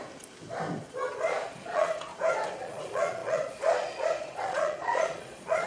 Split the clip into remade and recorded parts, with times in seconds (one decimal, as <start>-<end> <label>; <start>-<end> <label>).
0.0-0.8 recorded; 0.8-2.1 remade; 2.1-2.6 recorded; 2.6-5.7 remade